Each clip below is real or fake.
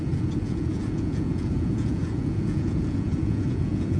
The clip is fake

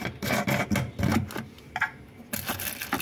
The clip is real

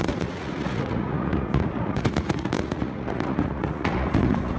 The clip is fake